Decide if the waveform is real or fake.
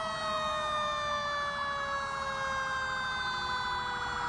real